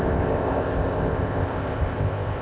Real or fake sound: fake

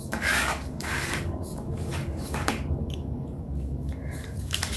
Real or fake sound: fake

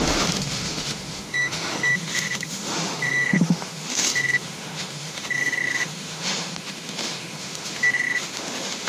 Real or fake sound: fake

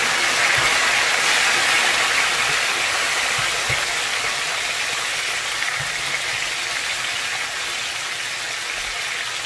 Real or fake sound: real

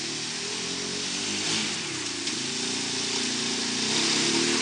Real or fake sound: real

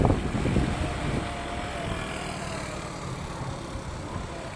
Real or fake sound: real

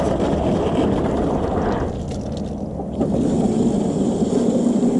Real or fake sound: real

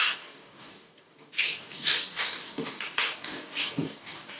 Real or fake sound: fake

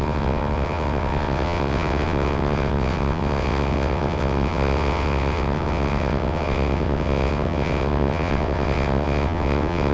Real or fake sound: fake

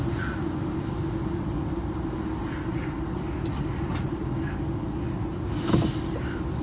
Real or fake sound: real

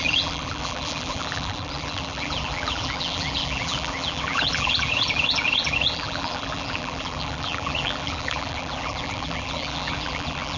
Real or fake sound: fake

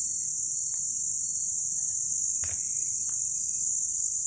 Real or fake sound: real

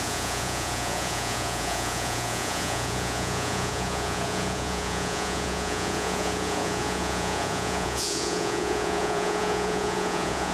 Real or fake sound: fake